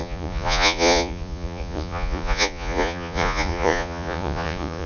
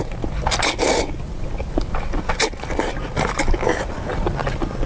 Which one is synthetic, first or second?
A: first